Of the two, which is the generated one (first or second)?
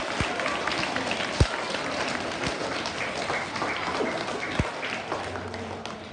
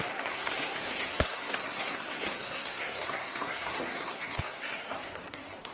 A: second